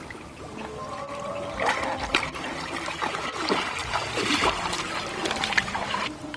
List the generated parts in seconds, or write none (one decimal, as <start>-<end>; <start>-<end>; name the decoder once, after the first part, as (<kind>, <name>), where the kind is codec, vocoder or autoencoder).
3.8-4.7 (vocoder, BigVGAN v2)